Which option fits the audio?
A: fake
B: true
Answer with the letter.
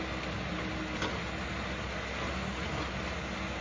B